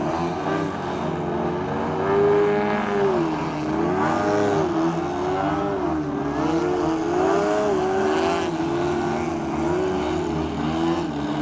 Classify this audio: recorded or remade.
recorded